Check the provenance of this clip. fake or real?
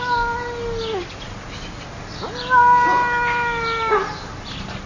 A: real